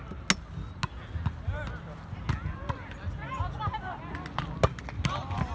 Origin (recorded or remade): recorded